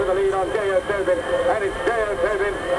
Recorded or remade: recorded